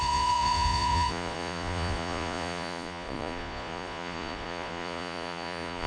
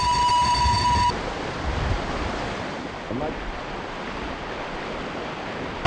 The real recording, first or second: second